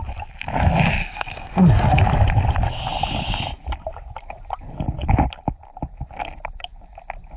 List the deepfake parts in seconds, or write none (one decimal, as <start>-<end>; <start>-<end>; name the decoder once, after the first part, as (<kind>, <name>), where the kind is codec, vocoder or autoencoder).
1.0-2.0 (codec, SNAC)